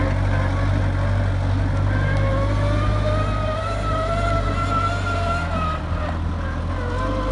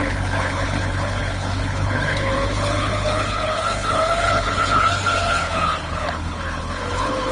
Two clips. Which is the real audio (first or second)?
first